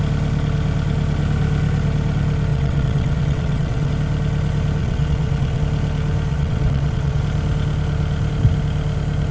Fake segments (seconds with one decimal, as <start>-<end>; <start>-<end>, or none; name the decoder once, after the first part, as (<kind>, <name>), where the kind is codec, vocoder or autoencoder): 2.5-3.9 (vocoder, WaveNeXt); 4.8-5.6; 6.3-7.2